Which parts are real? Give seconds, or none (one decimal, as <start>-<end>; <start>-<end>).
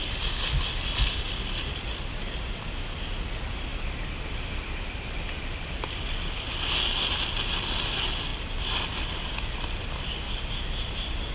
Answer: 0.0-11.3